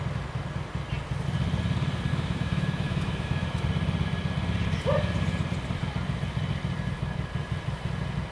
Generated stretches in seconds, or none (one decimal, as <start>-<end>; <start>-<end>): 2.1-3.6